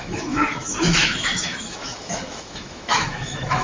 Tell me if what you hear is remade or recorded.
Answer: remade